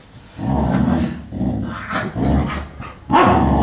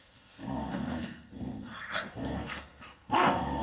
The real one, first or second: first